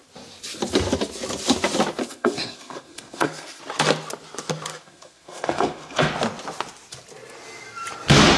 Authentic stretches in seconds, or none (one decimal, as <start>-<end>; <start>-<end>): 0.0-2.0; 3.6-4.7; 6.1-8.4